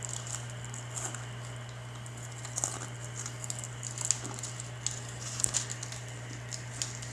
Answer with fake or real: real